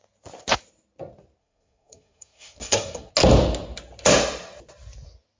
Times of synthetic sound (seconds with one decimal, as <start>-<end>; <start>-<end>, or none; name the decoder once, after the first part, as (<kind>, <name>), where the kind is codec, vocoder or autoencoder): 1.4-3.1 (codec, SNAC)